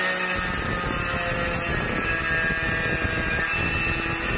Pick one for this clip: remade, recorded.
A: recorded